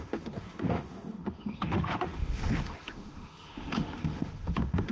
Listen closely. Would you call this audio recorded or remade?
remade